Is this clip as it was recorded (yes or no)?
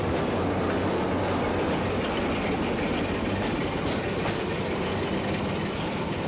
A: yes